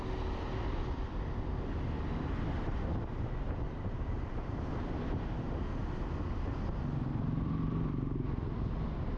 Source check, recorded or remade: recorded